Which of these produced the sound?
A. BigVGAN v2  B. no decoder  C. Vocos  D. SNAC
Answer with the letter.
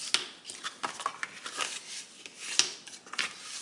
B